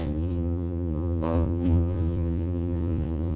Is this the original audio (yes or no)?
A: no